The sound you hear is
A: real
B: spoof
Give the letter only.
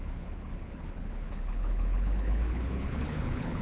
B